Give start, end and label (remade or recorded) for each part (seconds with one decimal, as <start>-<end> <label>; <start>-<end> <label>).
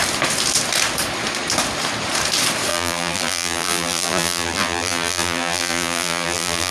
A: 0.0-2.7 recorded; 2.7-6.7 remade